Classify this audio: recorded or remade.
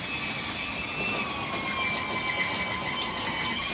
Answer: recorded